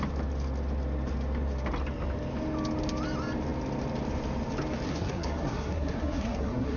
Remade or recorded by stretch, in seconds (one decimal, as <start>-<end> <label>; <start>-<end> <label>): 0.0-4.9 recorded; 4.9-6.8 remade